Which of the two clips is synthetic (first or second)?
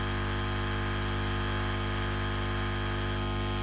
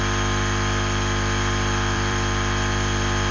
second